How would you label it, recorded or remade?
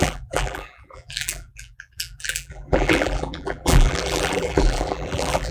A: remade